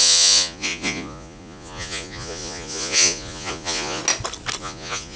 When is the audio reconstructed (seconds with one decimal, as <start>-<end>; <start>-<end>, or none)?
0.0-4.0; 4.6-5.2